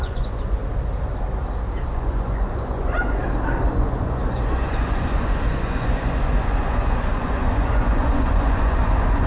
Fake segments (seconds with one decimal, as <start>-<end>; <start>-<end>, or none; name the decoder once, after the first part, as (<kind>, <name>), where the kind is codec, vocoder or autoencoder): 0.0-0.6 (vocoder, Vocos); 1.9-3.2; 3.7-9.3